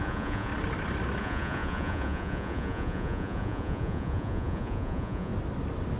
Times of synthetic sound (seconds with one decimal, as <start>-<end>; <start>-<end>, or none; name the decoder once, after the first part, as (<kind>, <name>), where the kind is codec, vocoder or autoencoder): 0.0-0.5 (vocoder, Vocos); 1.2-5.3